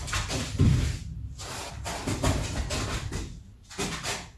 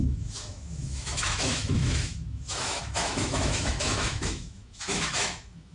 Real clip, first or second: first